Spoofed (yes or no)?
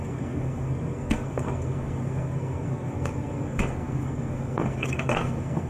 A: yes